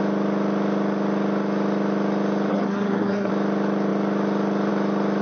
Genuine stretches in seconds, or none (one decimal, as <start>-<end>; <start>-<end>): 0.0-2.5; 3.3-5.2